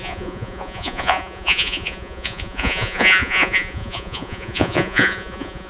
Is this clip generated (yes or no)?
yes